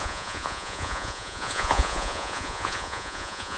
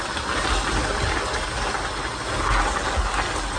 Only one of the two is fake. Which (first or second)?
first